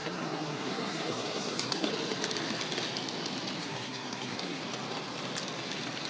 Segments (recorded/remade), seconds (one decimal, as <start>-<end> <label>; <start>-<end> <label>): 0.0-1.9 remade; 1.9-3.6 recorded; 3.6-4.6 remade; 4.6-6.1 recorded